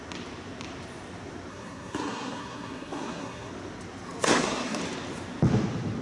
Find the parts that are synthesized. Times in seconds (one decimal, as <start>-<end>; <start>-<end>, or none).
1.5-3.5; 4.3-4.8